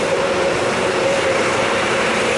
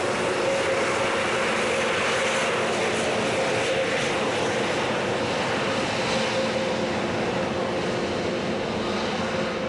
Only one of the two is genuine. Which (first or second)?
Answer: second